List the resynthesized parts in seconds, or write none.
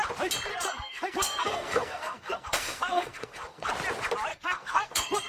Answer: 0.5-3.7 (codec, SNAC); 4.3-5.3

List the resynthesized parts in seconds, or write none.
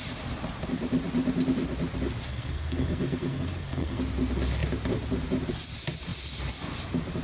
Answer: 2.3-4.0 (codec, SNAC)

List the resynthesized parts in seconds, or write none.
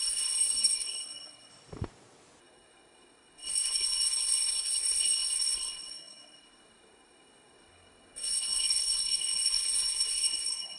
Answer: 0.0-1.5 (codec, SNAC); 2.4-10.8